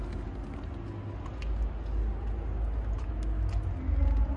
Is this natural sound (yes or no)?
yes